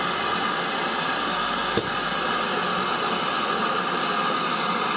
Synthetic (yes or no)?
no